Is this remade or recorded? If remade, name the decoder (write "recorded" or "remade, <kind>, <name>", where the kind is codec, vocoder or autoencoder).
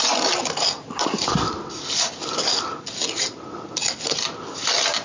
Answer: recorded